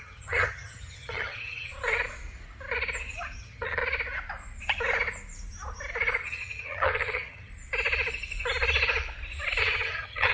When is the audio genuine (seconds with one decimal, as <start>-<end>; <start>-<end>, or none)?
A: 1.7-3.4; 3.8-6.2; 7.5-9.6